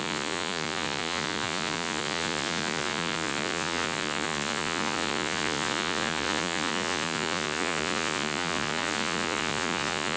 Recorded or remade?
remade